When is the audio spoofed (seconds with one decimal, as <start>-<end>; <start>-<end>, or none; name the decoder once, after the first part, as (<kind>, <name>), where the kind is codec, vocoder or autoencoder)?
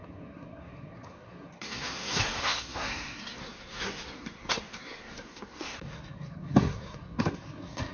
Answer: 0.0-7.9 (codec, SNAC)